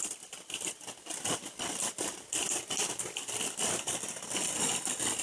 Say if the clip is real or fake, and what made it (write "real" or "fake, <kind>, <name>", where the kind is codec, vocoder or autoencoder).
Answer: real